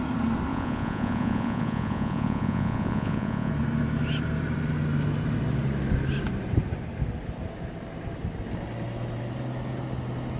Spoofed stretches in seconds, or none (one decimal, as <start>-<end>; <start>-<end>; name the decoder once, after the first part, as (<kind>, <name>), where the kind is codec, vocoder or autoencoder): 0.5-3.5 (vocoder, Vocos)